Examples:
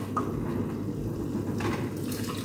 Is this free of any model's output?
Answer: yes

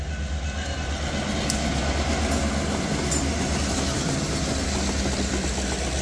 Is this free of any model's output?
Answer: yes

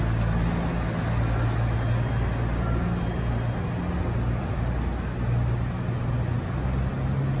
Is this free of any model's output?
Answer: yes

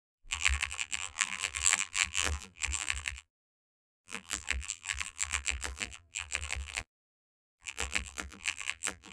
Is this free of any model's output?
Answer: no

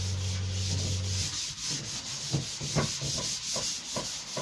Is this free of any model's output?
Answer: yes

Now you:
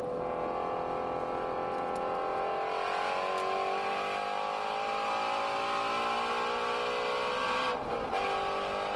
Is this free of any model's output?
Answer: yes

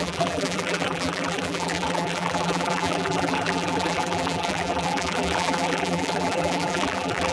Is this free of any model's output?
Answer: no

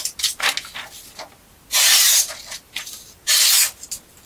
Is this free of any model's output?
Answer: yes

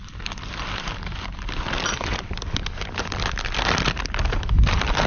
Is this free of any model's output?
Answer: no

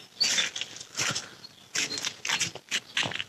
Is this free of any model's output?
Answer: yes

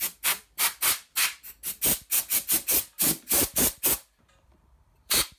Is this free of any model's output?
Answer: no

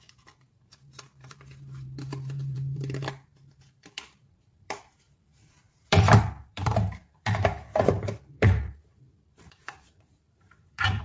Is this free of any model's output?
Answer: no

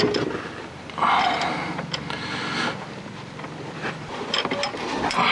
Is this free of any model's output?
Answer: no